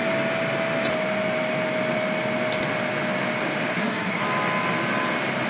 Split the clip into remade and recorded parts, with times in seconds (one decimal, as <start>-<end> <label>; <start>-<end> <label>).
0.0-3.7 recorded; 3.7-4.2 remade; 4.2-5.5 recorded